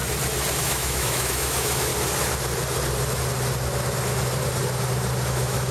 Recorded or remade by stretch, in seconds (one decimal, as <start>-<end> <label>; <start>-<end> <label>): 0.0-0.6 recorded; 0.6-1.9 remade; 1.9-5.3 recorded; 5.3-5.7 remade